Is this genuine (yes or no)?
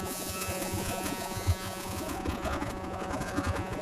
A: no